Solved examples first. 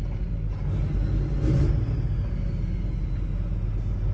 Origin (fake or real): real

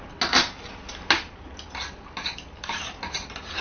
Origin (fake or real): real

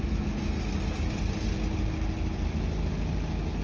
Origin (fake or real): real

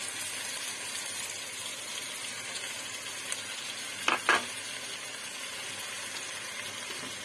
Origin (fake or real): real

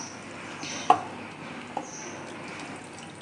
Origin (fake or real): real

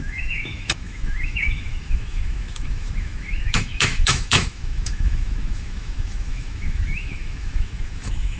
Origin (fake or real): fake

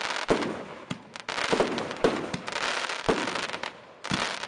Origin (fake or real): real